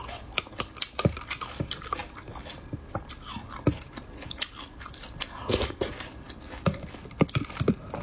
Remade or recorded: recorded